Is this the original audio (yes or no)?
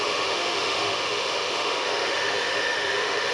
no